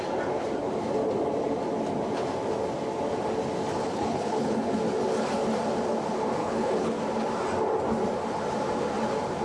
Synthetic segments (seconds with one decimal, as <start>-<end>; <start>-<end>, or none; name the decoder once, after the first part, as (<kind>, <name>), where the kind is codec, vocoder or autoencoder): 3.8-4.7 (codec, HILCodec); 6.4-7.0